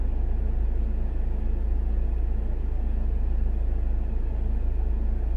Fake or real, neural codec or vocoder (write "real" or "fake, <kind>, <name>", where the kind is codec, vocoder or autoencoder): real